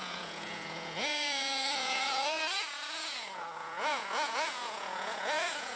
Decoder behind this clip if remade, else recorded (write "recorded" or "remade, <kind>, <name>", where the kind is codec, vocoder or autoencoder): remade, vocoder, Vocos